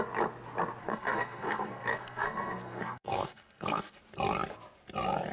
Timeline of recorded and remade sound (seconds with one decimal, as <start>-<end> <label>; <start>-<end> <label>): 0.0-0.8 recorded; 0.8-4.0 remade; 4.0-5.3 recorded